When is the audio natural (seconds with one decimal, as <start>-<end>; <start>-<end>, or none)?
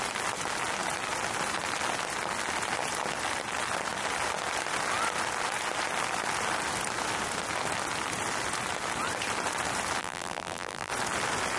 0.0-10.0; 10.9-11.6